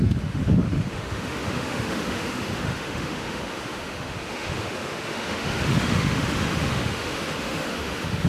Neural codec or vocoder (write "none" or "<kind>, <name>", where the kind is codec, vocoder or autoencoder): autoencoder, DAC-VAE